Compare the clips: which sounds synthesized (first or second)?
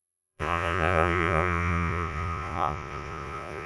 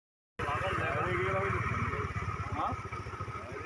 first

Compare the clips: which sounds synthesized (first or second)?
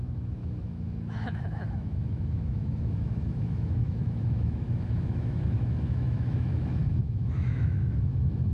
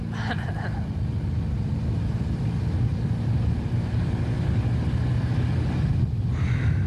first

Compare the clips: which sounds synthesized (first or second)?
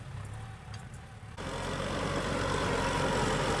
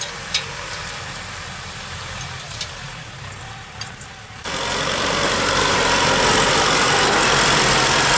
second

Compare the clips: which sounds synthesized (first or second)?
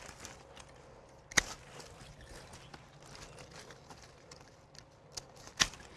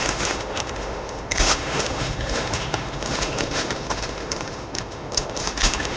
second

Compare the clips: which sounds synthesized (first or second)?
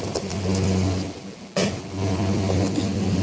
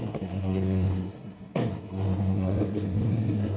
second